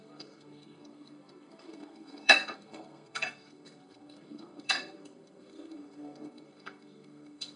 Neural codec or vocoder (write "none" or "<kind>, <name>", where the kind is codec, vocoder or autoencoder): codec, SNAC